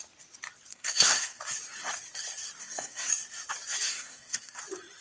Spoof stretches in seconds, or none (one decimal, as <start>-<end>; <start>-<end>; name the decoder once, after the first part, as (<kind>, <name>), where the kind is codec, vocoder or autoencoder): 0.7-1.4 (codec, SNAC); 2.6-3.1; 3.9-4.6